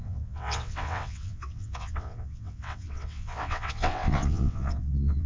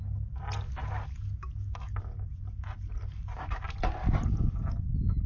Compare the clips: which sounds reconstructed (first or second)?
first